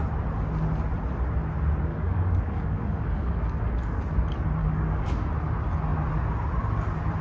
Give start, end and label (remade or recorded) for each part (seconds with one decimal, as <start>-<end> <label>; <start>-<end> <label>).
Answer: 0.0-1.9 recorded; 1.9-4.0 remade; 4.0-4.6 recorded; 4.6-5.1 remade; 5.1-7.2 recorded